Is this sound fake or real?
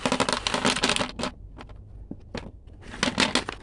real